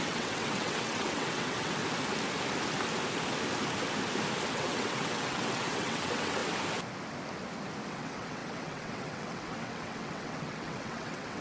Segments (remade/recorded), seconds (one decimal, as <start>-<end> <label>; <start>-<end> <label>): 0.0-1.8 remade; 1.8-4.5 recorded; 4.5-6.4 remade; 6.4-7.9 recorded; 7.9-11.4 remade